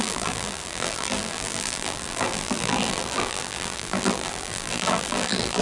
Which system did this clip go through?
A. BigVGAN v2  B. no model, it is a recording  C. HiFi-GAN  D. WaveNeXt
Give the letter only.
A